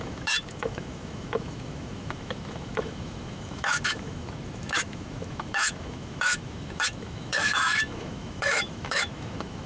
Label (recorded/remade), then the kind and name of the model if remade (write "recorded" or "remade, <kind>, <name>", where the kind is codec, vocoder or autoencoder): remade, autoencoder, DAC-VAE